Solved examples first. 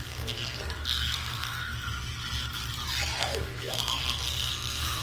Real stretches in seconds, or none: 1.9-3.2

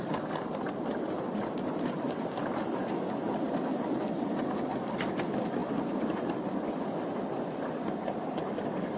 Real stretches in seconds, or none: 0.0-9.0

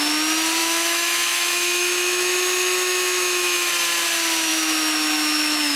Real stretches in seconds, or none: 0.0-0.6; 3.7-4.5

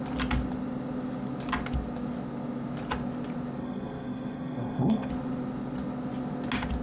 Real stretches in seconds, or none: 0.0-3.6; 5.1-6.8

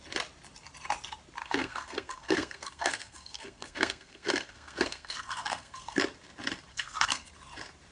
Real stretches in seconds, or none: 0.0-1.4; 6.0-6.7; 7.3-7.9

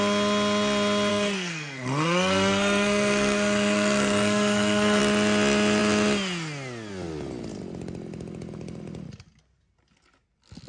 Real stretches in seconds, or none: 0.0-1.1; 5.0-10.7

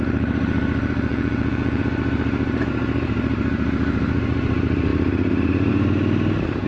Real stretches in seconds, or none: 0.0-1.1; 1.8-6.7